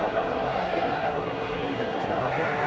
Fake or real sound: fake